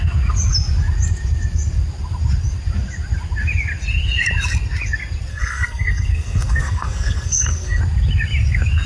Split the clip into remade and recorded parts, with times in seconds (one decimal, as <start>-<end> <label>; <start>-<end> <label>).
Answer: 0.0-5.3 recorded; 5.3-7.8 remade; 7.8-8.9 recorded